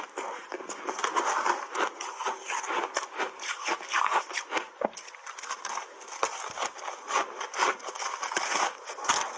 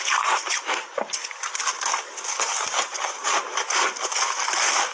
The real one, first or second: first